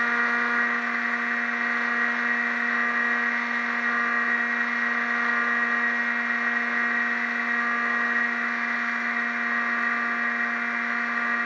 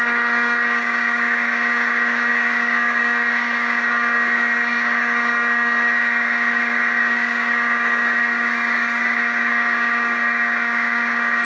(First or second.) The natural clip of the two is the first